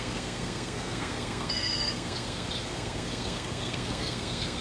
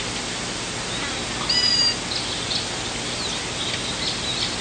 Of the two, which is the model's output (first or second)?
first